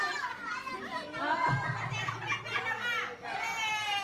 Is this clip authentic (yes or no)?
yes